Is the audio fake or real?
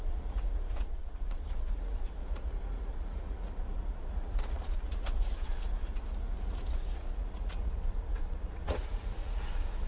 fake